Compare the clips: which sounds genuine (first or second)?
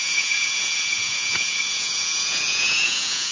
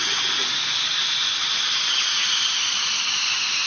second